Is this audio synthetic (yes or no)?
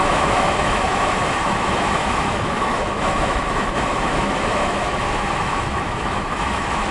yes